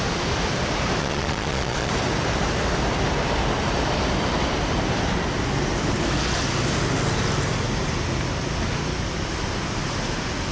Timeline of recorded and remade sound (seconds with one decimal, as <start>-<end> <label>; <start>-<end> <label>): 0.0-1.0 recorded; 1.0-1.9 remade; 1.9-10.5 recorded